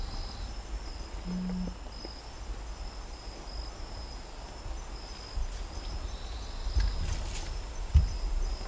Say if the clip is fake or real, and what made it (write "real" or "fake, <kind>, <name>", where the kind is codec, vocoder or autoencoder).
real